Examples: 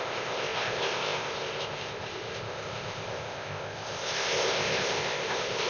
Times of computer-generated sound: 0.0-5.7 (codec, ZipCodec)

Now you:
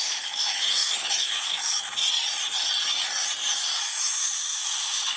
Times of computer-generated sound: 0.0-2.0 (autoencoder, DAC-VAE); 3.8-5.2